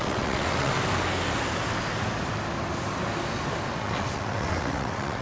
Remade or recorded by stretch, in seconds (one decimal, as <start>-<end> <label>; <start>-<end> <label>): 0.0-0.7 remade; 0.7-3.8 recorded; 3.8-5.2 remade